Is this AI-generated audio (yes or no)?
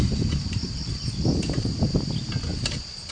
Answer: no